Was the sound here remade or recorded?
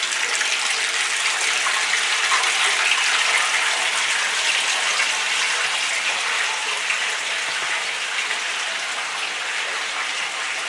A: recorded